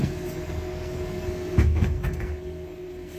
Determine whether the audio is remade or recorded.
remade